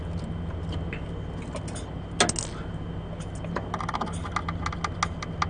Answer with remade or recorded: recorded